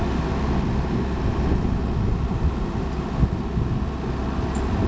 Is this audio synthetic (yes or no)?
no